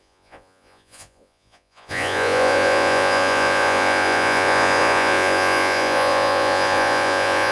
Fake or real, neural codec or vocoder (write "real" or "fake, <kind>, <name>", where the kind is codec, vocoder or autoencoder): fake, vocoder, Vocos